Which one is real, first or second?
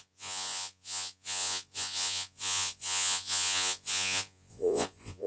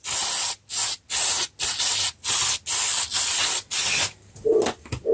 second